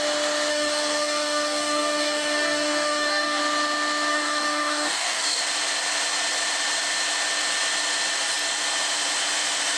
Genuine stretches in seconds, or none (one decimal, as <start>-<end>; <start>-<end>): 0.0-0.5; 3.4-4.1; 5.4-9.8